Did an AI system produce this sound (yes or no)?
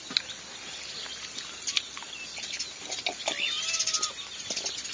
no